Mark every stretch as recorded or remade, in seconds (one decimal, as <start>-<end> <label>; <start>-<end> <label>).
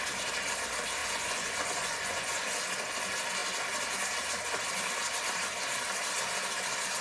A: 0.0-1.0 recorded; 1.0-2.5 remade; 2.5-7.0 recorded